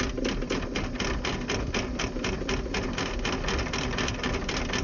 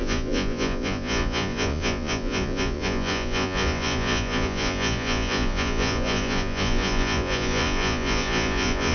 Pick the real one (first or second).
first